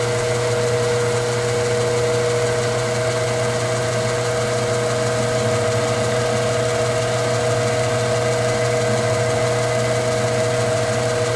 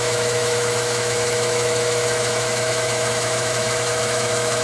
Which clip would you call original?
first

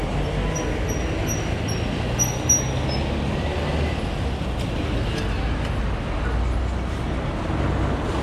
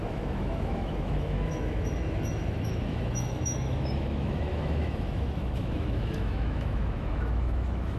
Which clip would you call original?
first